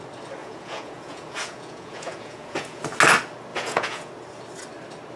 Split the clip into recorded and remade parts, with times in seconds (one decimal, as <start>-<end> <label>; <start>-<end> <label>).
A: 0.0-0.4 recorded; 0.4-2.8 remade; 2.8-3.5 recorded; 3.5-4.1 remade; 4.1-5.2 recorded